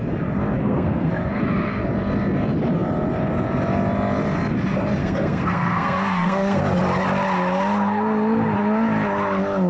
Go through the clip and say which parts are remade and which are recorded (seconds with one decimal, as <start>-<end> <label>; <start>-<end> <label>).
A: 0.0-0.6 recorded; 0.6-1.1 remade; 1.1-5.0 recorded; 5.0-6.6 remade; 6.6-9.7 recorded